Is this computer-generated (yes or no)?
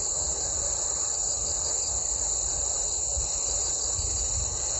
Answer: yes